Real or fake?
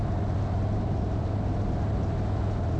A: real